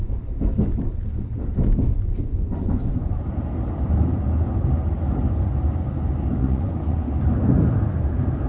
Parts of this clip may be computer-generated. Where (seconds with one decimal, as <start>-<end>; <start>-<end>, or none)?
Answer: 2.3-3.2; 6.4-7.1